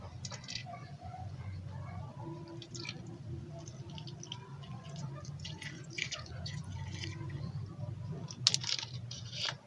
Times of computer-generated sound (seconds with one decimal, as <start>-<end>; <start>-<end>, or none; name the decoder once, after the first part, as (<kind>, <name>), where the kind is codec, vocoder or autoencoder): 0.6-2.0 (vocoder, Vocos); 4.5-7.6